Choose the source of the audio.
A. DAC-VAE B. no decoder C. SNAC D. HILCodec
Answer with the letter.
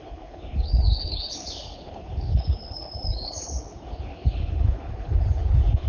D